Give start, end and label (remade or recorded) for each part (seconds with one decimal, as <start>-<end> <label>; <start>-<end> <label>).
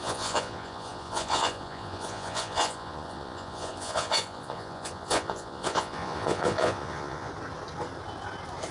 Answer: 0.0-7.3 remade; 7.3-8.7 recorded